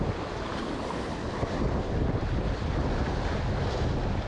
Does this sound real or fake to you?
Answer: real